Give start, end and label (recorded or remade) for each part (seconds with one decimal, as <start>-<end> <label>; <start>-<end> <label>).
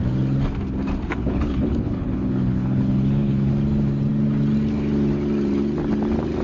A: 0.0-1.1 recorded; 1.1-3.5 remade; 3.5-6.4 recorded